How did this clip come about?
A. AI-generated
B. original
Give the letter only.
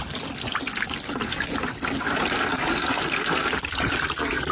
B